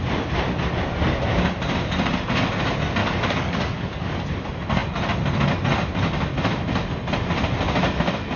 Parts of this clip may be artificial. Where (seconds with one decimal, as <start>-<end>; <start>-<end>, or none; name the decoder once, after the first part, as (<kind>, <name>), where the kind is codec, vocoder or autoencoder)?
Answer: 3.0-4.1 (codec, DAC)